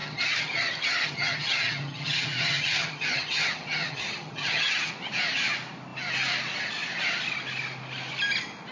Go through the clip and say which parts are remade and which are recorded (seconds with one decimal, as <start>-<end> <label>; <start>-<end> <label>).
0.0-4.9 remade; 4.9-8.7 recorded